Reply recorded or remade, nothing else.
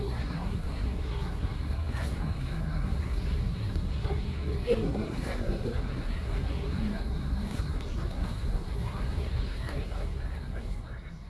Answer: remade